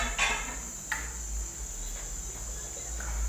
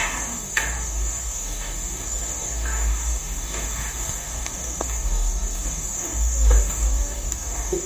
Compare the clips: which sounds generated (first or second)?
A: second